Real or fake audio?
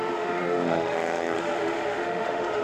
fake